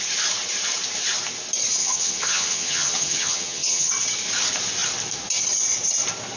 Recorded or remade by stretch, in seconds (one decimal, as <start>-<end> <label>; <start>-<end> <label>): 0.0-1.8 recorded; 1.8-3.9 remade; 3.9-6.4 recorded

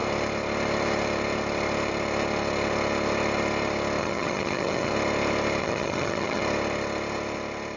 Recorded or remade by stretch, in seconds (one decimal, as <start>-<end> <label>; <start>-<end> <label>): 0.0-4.0 recorded; 4.0-4.9 remade; 4.9-5.6 recorded; 5.6-6.4 remade; 6.4-7.8 recorded